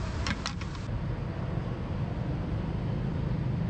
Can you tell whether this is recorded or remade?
recorded